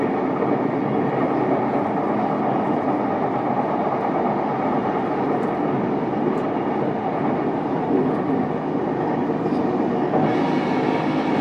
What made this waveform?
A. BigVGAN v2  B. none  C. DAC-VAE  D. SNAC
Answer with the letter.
B